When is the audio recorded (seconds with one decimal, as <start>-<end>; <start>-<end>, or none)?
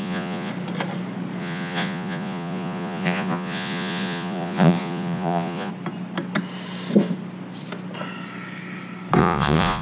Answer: 0.5-1.4; 5.7-9.2